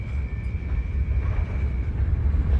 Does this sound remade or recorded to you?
recorded